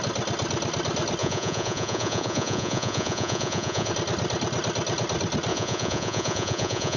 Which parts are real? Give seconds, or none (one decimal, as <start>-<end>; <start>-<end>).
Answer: 0.0-1.2; 3.9-5.5